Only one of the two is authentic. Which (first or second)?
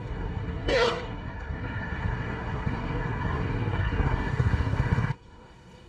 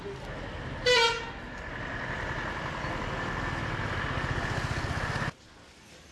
second